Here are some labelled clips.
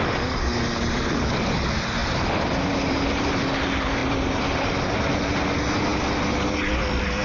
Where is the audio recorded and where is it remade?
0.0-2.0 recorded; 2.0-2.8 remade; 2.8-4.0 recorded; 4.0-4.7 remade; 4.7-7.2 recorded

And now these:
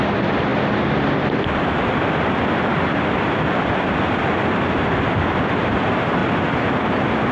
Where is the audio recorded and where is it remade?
0.0-0.5 recorded; 0.5-4.4 remade; 4.4-6.2 recorded; 6.2-6.8 remade; 6.8-7.3 recorded

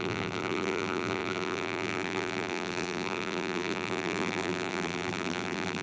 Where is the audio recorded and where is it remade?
0.0-5.8 remade

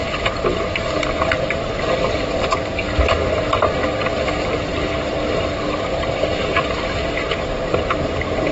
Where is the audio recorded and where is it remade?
0.0-8.5 recorded

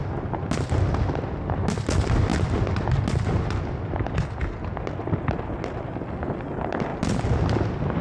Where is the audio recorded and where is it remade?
0.0-8.0 recorded